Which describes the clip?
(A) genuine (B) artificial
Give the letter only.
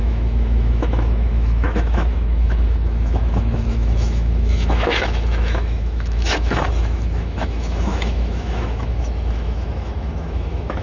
B